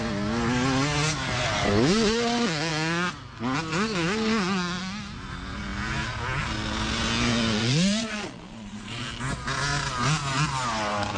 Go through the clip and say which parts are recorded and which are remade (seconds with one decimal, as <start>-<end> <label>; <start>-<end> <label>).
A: 0.0-7.6 recorded; 7.6-9.0 remade; 9.0-11.2 recorded